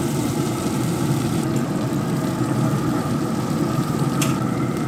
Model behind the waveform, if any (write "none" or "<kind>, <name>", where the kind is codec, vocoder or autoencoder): vocoder, BigVGAN v2